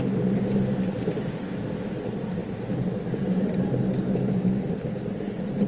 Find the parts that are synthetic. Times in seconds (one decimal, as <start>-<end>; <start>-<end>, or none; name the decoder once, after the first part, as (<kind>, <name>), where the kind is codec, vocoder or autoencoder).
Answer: 2.4-3.8 (vocoder, BigVGAN v2)